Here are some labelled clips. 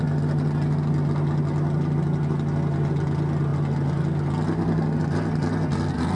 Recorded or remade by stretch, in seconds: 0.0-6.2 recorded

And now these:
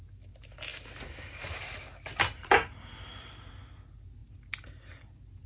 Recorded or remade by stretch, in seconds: 0.0-5.5 recorded

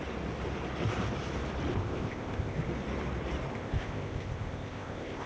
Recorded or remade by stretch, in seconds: 0.0-1.7 recorded; 1.7-2.6 remade; 2.6-3.5 recorded; 3.5-5.3 remade